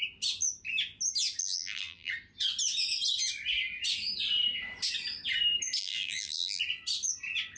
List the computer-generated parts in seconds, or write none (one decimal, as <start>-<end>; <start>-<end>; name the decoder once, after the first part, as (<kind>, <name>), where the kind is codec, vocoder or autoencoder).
1.4-2.1 (vocoder, BigVGAN v2); 5.8-6.6